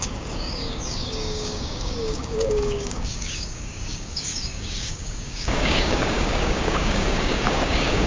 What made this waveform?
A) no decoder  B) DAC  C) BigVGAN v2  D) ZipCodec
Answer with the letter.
B